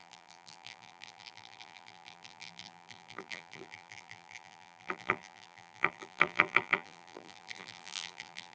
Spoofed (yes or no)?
yes